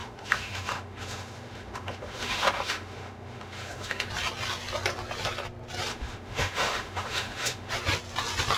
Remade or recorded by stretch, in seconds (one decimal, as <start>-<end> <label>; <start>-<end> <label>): 0.0-4.1 remade; 4.1-5.9 recorded; 5.9-7.7 remade; 7.7-8.6 recorded